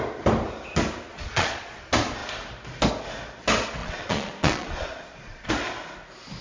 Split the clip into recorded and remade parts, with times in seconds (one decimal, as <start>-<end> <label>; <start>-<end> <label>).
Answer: 0.0-1.1 recorded; 1.1-1.8 remade; 1.8-3.8 recorded; 3.8-5.5 remade; 5.5-6.4 recorded